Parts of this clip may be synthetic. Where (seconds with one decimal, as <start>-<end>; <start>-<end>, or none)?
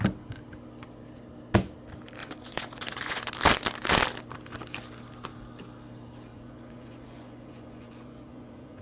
2.2-3.3; 6.3-8.8